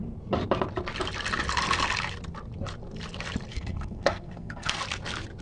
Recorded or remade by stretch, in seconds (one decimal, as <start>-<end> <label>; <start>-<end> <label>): 0.0-3.5 recorded; 3.5-4.8 remade; 4.8-5.4 recorded

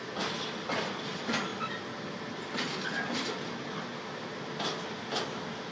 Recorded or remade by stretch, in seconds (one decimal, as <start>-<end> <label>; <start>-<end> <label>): 0.0-5.7 recorded